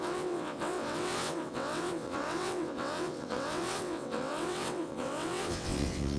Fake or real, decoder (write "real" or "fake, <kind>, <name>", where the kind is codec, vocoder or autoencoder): fake, vocoder, WaveNeXt